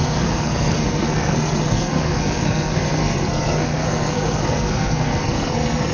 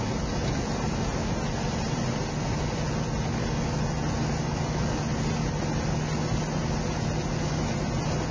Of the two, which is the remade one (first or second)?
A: first